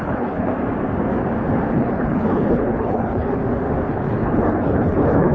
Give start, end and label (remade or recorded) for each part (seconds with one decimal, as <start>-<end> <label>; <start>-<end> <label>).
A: 0.0-0.5 remade; 0.5-1.7 recorded; 1.7-3.4 remade; 3.4-3.9 recorded; 3.9-5.3 remade